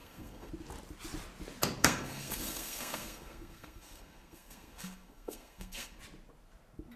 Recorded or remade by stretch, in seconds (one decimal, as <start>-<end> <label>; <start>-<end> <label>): 0.0-0.5 remade; 0.5-1.8 recorded; 1.8-6.0 remade; 6.0-7.0 recorded